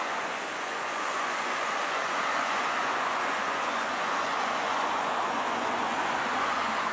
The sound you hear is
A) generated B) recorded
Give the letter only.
A